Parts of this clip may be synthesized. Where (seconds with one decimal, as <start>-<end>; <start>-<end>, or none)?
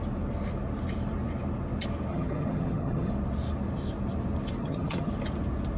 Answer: 2.1-3.1; 4.6-5.1